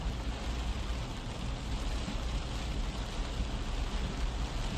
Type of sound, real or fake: real